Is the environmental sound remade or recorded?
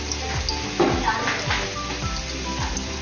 recorded